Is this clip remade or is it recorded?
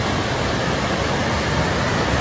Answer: recorded